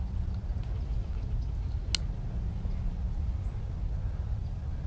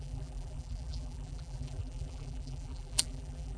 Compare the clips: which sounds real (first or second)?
first